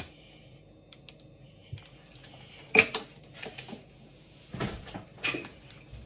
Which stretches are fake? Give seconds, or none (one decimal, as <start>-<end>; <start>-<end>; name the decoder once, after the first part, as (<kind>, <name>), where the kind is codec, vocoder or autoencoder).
none